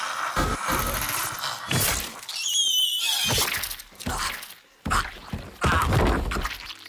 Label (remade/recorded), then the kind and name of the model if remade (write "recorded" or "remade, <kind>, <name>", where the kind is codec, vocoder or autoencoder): recorded